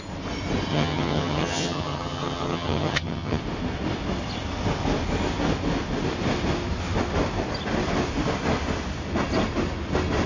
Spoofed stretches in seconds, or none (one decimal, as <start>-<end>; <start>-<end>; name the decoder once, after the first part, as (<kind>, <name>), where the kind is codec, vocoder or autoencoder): 0.7-3.4 (vocoder, HiFi-GAN)